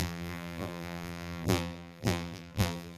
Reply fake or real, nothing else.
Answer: fake